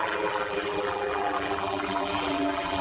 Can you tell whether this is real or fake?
fake